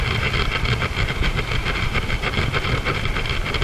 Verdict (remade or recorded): recorded